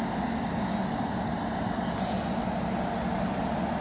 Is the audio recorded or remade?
recorded